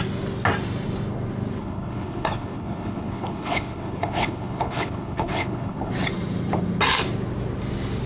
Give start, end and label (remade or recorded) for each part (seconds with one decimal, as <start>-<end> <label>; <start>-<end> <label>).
0.0-1.6 recorded; 1.6-5.9 remade; 5.9-8.1 recorded